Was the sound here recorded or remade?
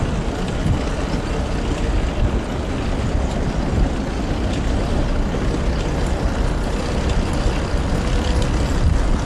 recorded